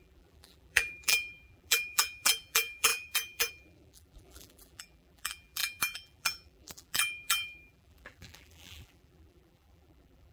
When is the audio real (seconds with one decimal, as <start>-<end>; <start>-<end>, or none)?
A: none